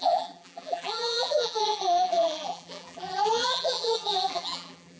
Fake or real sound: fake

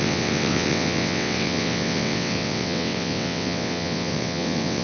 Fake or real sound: fake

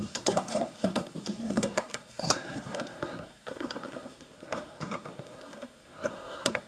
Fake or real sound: fake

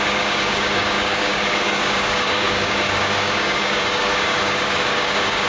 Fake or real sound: fake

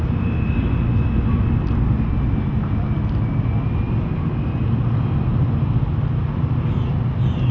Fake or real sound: real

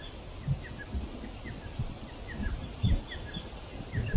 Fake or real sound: real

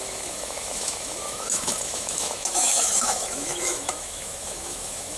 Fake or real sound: fake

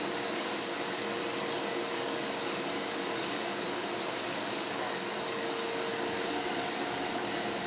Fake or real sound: fake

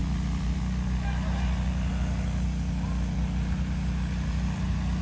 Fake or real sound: real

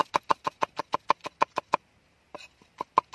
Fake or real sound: real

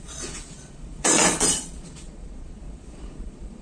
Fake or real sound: fake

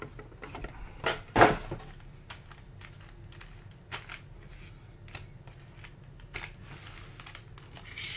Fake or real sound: real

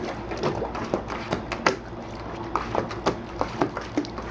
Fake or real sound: real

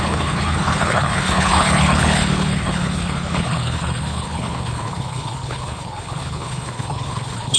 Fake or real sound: fake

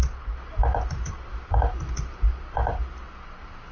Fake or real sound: real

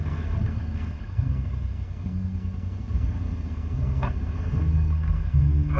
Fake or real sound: fake